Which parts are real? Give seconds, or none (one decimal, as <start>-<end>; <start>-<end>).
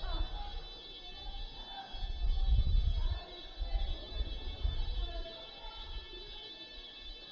0.0-3.0; 5.6-7.3